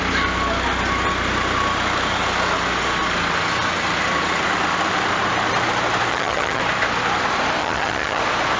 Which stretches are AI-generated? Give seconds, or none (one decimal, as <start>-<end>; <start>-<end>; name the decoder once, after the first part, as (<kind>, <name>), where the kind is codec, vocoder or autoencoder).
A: 6.1-6.6 (vocoder, HiFi-GAN); 7.6-8.2